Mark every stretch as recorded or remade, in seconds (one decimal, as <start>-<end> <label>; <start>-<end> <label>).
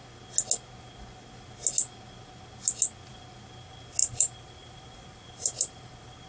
0.0-4.0 recorded; 4.0-6.3 remade